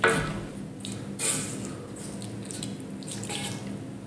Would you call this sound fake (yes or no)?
no